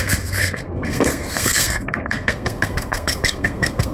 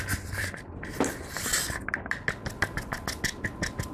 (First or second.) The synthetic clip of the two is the first